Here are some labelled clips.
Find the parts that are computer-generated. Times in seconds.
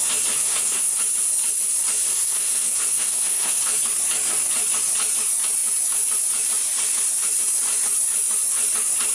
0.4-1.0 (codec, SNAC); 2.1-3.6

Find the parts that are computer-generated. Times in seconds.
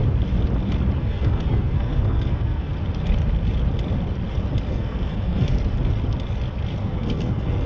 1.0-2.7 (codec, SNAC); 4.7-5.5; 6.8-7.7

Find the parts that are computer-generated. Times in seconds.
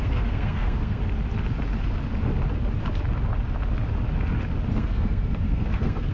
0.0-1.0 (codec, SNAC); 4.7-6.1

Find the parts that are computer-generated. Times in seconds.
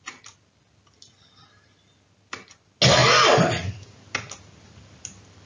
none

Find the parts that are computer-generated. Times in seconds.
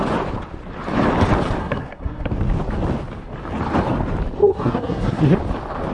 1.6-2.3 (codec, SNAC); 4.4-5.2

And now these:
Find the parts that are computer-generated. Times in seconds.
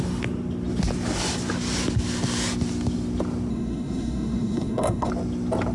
3.5-5.1 (codec, SNAC)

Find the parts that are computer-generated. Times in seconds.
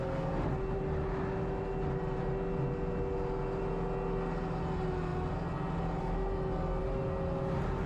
none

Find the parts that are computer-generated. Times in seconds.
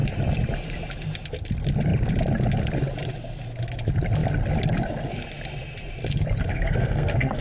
6.5-7.4 (codec, SNAC)